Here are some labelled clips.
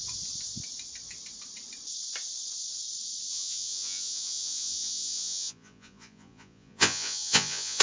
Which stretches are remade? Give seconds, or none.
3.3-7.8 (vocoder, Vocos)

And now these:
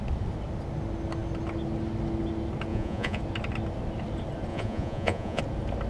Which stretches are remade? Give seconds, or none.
2.7-3.2 (vocoder, Vocos); 4.5-5.4

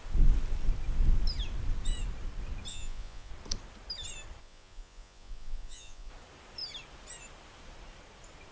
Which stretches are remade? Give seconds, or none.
2.7-3.3 (vocoder, Vocos); 4.4-6.1

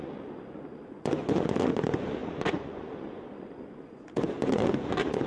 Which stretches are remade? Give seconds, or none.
0.0-5.3 (vocoder, Vocos)

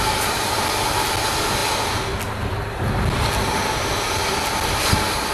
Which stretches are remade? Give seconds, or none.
none

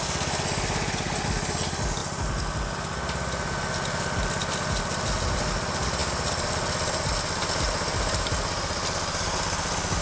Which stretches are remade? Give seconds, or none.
none